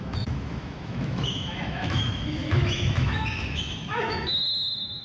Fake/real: fake